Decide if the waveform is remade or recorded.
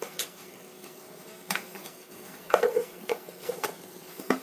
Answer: remade